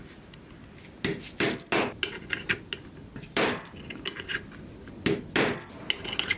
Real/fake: real